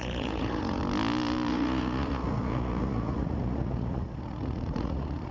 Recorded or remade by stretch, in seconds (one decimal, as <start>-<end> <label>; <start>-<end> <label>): 0.0-0.8 remade; 0.8-1.5 recorded; 1.5-5.3 remade